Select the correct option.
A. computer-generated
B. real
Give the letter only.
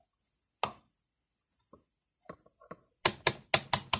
B